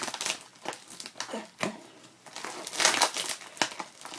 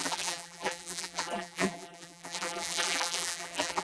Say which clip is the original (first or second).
first